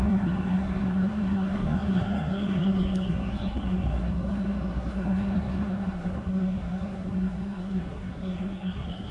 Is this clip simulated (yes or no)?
yes